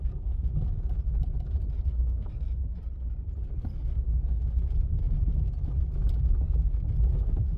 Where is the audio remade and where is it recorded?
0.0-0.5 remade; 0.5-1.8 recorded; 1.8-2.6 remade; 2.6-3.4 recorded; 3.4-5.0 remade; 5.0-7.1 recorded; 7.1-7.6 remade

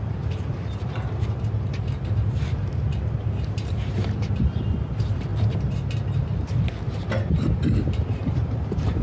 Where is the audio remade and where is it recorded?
0.0-5.3 remade; 5.3-6.8 recorded; 6.8-9.0 remade

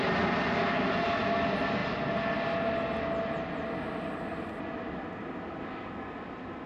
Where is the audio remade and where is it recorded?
0.0-6.7 recorded

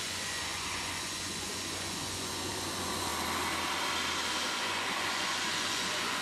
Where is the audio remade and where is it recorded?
0.0-3.1 remade; 3.1-4.5 recorded; 4.5-6.2 remade

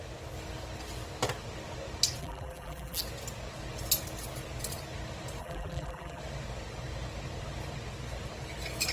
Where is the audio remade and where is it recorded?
0.0-2.2 recorded; 2.2-3.0 remade; 3.0-5.4 recorded; 5.4-6.2 remade; 6.2-8.9 recorded

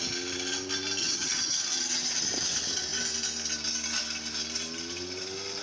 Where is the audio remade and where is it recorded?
0.0-1.0 recorded; 1.0-1.6 remade; 1.6-5.6 recorded

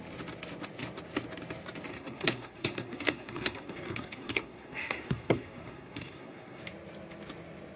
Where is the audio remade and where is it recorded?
0.0-1.9 recorded; 1.9-6.6 remade; 6.6-7.8 recorded

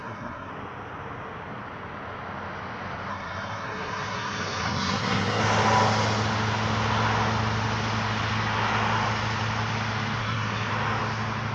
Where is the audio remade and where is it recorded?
0.0-0.5 remade; 0.5-3.1 recorded; 3.1-5.4 remade; 5.4-10.2 recorded; 10.2-10.7 remade; 10.7-11.5 recorded